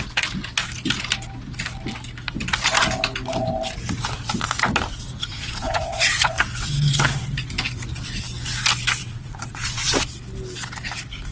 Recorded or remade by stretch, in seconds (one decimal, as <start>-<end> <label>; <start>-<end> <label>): 0.0-4.9 recorded; 4.9-6.1 remade; 6.1-9.0 recorded; 9.0-10.0 remade; 10.0-11.3 recorded